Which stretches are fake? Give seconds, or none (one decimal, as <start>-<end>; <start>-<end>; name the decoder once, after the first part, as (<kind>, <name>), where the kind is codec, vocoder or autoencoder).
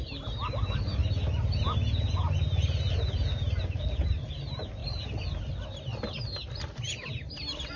none